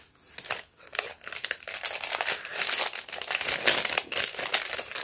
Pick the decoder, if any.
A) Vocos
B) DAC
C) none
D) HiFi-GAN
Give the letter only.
C